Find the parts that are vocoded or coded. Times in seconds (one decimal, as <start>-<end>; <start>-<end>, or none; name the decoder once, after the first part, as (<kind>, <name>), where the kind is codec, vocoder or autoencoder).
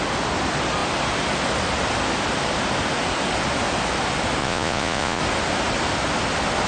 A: 4.4-5.2 (vocoder, Vocos)